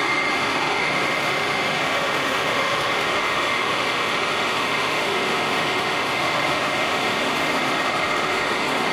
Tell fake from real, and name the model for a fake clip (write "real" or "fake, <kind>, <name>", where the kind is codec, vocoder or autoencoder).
fake, autoencoder, DAC-VAE